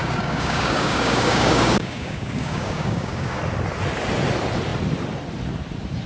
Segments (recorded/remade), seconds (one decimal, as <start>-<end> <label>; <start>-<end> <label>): 0.0-3.4 remade; 3.4-6.1 recorded